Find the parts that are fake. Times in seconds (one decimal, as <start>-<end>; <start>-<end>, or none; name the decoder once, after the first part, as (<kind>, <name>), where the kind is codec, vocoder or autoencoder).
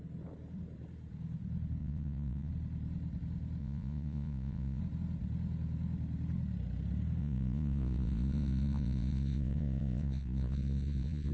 1.8-2.5 (vocoder, Vocos); 3.6-4.8; 7.2-11.3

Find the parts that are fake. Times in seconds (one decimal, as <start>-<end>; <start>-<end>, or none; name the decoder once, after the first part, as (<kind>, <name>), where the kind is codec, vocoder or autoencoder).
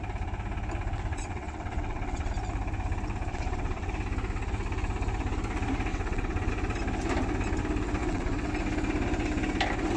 1.1-2.3 (vocoder, WaveNeXt); 3.3-3.9; 5.9-6.5; 8.0-8.5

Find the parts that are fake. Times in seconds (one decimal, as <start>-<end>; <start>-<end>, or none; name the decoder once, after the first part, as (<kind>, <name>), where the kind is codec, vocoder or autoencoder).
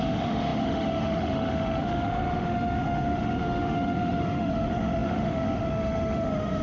0.0-6.6 (autoencoder, DAC-VAE)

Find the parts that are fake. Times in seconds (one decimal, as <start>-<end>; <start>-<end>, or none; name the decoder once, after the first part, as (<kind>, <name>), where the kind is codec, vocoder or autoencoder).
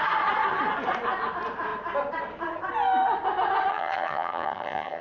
3.7-5.0 (vocoder, HiFi-GAN)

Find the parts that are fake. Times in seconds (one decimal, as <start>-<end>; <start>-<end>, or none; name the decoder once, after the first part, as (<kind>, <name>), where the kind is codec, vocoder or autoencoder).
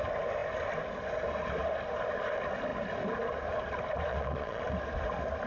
4.1-4.6 (vocoder, Vocos)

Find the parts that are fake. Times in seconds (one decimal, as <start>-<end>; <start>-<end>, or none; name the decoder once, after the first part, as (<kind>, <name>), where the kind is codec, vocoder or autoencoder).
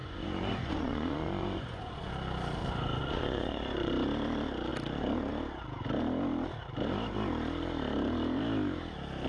0.0-2.1 (vocoder, Vocos); 2.6-3.9